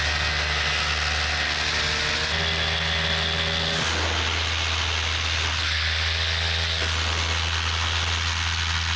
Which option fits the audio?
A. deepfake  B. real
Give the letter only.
B